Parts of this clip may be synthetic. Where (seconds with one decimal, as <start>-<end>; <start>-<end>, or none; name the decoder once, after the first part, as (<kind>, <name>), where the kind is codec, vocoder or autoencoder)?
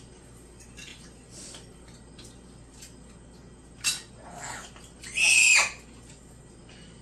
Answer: none